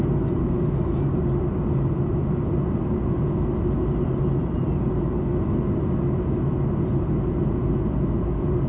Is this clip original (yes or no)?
yes